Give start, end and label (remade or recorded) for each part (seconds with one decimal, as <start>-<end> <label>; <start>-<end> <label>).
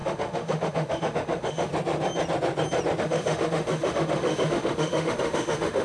0.0-1.7 remade; 1.7-3.0 recorded; 3.0-5.8 remade